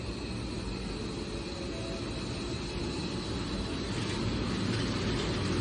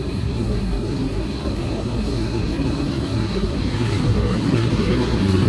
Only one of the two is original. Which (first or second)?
first